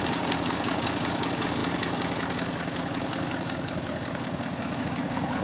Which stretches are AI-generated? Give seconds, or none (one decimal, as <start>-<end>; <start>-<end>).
0.0-5.4